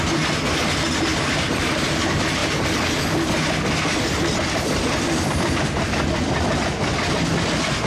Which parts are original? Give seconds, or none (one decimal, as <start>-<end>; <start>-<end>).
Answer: 0.0-1.1; 1.9-7.9